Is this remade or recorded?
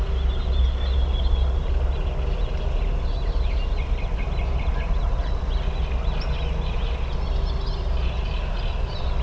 recorded